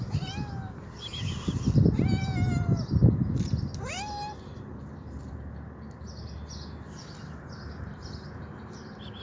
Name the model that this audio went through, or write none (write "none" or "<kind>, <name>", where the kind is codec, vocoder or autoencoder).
none